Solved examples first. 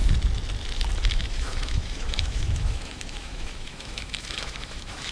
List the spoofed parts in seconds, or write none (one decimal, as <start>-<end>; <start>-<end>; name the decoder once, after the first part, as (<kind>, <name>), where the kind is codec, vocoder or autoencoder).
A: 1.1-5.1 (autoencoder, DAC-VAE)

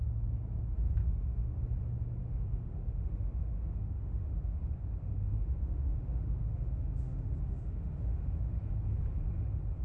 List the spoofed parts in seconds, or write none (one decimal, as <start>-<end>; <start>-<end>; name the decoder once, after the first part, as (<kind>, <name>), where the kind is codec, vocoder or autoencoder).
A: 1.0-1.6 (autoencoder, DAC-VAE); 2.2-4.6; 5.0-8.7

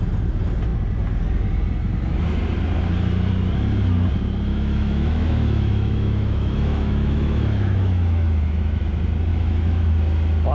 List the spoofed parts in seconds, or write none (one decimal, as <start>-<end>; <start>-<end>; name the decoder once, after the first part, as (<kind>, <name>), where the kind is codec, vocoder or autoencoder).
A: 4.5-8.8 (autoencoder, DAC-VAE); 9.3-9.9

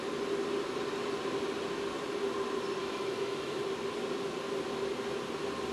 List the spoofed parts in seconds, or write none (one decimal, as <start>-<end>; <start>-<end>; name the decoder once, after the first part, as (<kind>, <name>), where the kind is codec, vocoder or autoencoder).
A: 2.8-3.6 (autoencoder, DAC-VAE)

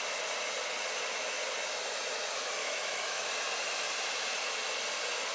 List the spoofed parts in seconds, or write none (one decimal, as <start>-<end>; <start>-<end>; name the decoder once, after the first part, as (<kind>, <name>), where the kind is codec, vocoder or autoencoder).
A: 2.6-3.3 (autoencoder, DAC-VAE)

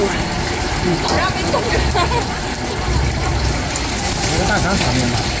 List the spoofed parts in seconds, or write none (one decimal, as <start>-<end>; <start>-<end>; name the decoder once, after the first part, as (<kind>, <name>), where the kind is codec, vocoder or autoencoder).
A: none